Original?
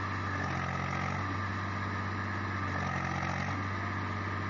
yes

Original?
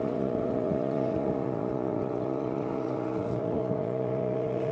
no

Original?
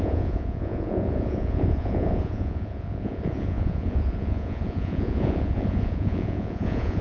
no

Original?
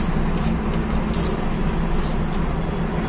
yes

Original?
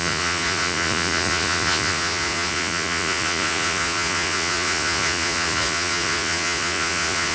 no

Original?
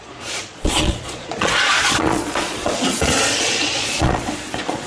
no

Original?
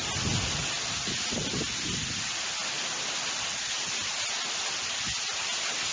yes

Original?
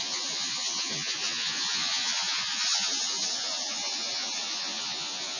no